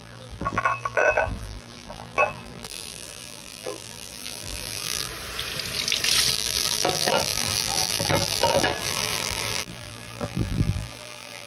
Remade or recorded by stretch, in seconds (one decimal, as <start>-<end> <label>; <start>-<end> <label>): 0.0-5.1 remade; 5.1-6.3 recorded; 6.3-11.5 remade